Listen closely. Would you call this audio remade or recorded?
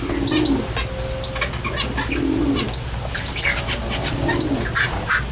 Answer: recorded